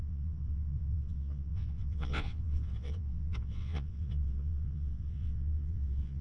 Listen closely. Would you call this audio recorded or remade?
remade